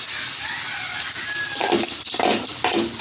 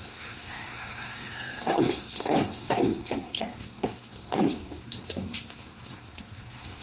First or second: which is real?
first